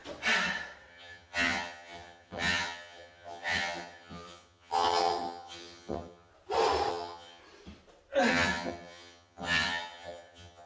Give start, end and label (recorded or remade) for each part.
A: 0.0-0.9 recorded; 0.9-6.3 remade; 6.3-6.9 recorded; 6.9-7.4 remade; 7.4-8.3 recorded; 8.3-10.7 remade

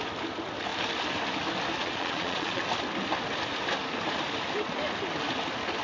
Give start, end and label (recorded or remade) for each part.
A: 0.0-1.8 recorded; 1.8-2.6 remade; 2.6-5.8 recorded

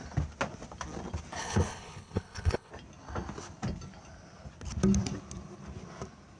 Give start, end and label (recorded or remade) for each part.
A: 0.0-1.4 recorded; 1.4-2.7 remade; 2.7-6.4 recorded

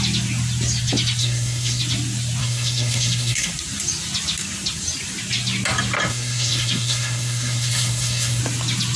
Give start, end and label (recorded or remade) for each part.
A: 0.0-1.2 recorded; 1.2-1.8 remade; 1.8-2.4 recorded; 2.4-3.5 remade; 3.5-6.1 recorded; 6.1-8.4 remade; 8.4-9.0 recorded

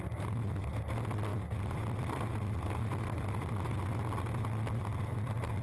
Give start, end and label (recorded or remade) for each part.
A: 0.0-5.6 recorded

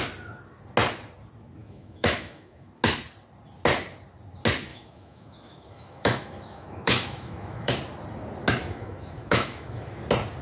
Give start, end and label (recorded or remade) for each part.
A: 0.0-1.6 recorded; 1.6-2.7 remade; 2.7-4.7 recorded; 4.7-7.7 remade; 7.7-8.6 recorded; 8.6-9.9 remade; 9.9-10.4 recorded

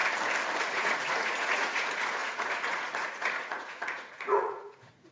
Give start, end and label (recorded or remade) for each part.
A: 0.0-0.6 recorded; 0.6-5.1 remade